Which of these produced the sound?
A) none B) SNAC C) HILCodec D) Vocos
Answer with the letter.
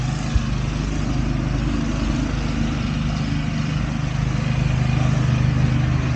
A